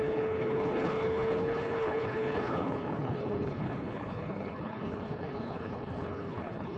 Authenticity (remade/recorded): remade